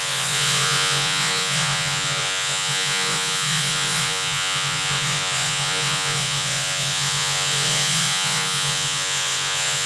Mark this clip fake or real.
fake